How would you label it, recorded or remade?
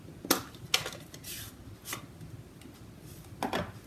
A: recorded